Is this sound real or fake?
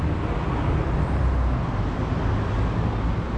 real